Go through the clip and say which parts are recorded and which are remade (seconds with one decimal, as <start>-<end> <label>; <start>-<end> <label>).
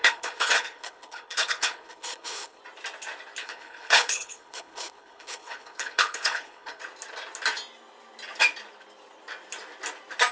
0.0-2.6 remade; 2.6-3.4 recorded; 3.4-6.8 remade; 6.8-10.3 recorded